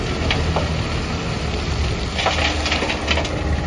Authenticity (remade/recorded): recorded